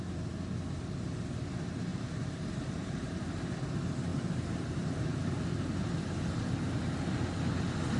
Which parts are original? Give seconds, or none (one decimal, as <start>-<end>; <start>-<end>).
0.0-1.9; 3.4-4.1; 6.2-8.0